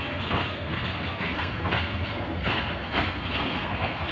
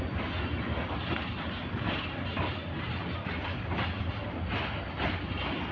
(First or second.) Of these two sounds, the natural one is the second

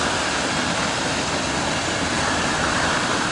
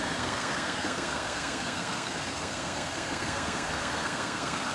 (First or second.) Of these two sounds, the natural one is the first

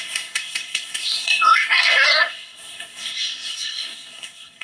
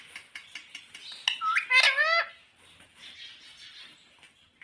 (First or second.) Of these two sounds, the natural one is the second